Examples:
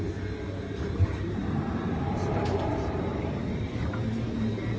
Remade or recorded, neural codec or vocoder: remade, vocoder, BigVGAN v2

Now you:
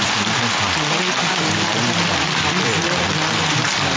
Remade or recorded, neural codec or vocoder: recorded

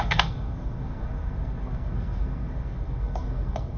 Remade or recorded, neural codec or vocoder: remade, codec, SNAC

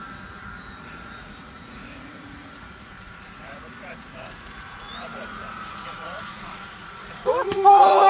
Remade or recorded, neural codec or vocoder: remade, vocoder, Vocos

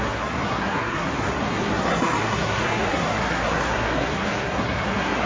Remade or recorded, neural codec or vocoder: remade, codec, SNAC